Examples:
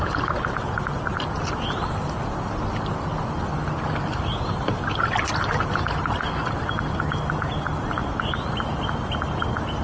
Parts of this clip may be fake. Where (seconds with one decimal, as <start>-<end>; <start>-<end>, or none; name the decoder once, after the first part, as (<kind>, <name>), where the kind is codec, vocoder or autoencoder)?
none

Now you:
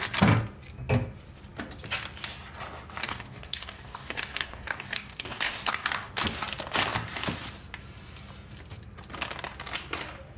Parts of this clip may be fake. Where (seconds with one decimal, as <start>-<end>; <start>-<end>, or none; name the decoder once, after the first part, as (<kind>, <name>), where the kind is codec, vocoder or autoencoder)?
3.0-6.2 (codec, DAC)

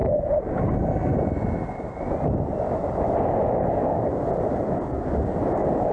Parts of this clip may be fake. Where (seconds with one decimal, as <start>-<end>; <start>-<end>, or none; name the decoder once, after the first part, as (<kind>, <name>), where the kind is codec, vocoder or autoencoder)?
3.5-4.1 (codec, DAC); 4.7-5.9

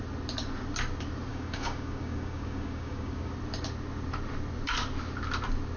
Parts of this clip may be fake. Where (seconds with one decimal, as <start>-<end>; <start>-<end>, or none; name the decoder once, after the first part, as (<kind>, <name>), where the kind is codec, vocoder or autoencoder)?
1.3-3.3 (codec, DAC)

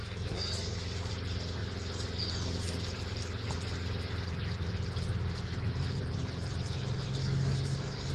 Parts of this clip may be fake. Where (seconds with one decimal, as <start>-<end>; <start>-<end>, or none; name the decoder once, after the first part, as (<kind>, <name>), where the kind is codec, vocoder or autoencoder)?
0.0-1.1 (codec, DAC); 7.2-8.1

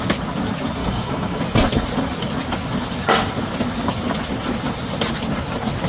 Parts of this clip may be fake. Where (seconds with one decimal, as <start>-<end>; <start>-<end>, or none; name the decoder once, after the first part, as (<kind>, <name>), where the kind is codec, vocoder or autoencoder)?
0.8-1.4 (codec, DAC)